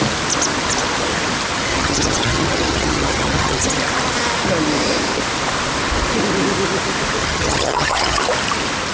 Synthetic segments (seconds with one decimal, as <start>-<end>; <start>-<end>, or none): 1.7-3.8; 7.2-8.2